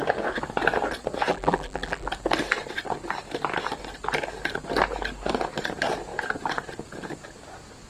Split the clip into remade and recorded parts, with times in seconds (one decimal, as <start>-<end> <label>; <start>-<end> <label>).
0.0-1.3 recorded; 1.3-2.1 remade; 2.1-7.9 recorded